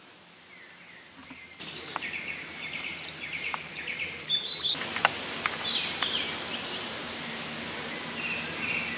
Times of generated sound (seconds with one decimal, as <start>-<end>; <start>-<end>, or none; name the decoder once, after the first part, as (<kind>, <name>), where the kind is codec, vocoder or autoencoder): 1.2-4.3 (vocoder, BigVGAN v2)